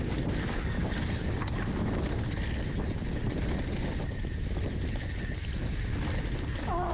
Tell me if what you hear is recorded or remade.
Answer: recorded